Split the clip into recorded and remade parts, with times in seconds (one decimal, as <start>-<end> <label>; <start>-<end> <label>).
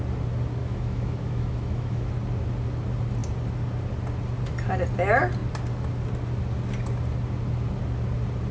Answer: 0.0-0.6 recorded; 0.6-2.1 remade; 2.1-8.5 recorded